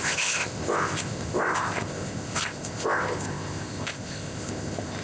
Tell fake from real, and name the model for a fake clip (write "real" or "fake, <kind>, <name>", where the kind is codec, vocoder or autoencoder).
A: fake, codec, ZipCodec